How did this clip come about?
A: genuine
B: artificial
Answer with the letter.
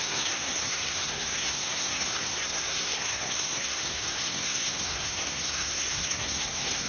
B